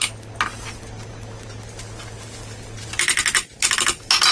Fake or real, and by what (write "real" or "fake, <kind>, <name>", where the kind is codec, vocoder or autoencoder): real